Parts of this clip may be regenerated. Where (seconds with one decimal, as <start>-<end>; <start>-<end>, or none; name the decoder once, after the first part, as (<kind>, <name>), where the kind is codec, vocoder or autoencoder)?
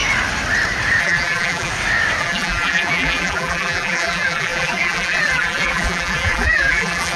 1.0-1.7 (vocoder, BigVGAN v2); 2.2-7.2